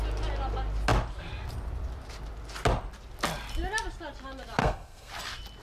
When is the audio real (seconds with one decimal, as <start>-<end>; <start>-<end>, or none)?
0.0-4.6; 5.1-5.6